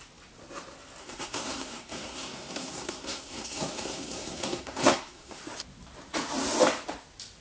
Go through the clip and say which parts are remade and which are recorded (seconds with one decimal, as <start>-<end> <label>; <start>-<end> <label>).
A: 0.0-1.0 recorded; 1.0-5.4 remade; 5.4-7.4 recorded